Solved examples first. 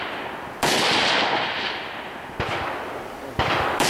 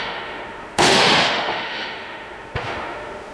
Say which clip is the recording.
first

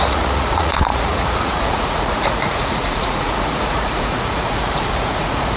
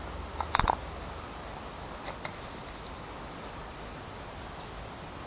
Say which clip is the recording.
second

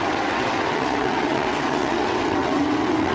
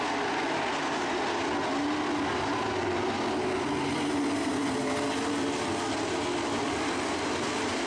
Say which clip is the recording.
second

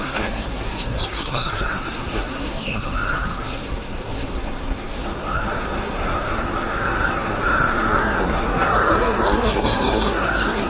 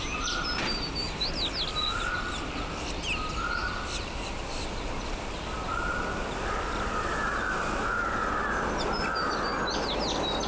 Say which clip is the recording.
second